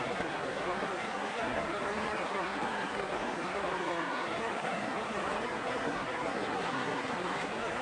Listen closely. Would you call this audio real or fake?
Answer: fake